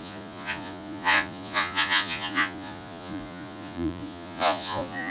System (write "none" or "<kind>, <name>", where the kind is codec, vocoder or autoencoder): vocoder, Vocos